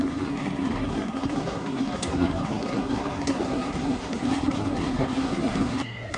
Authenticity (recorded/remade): remade